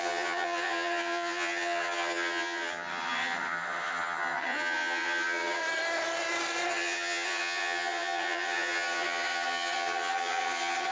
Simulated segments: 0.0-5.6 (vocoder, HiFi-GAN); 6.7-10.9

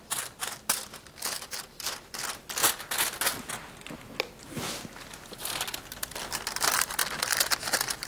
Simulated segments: 0.0-2.6 (vocoder, BigVGAN v2); 5.2-7.0

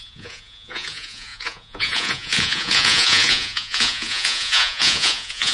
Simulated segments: 0.0-5.5 (vocoder, Vocos)

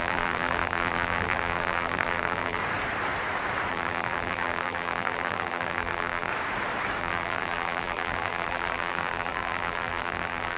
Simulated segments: 0.0-2.6 (vocoder, BigVGAN v2); 3.7-6.3; 7.0-10.6

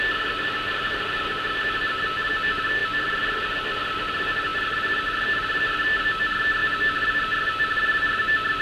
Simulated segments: none

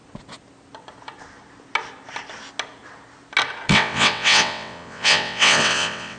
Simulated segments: 3.7-6.2 (vocoder, WaveNeXt)

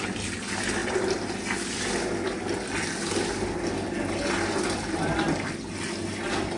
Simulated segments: none

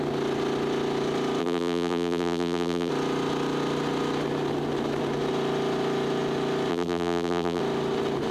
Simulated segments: 1.4-2.9 (vocoder, BigVGAN v2); 6.7-7.6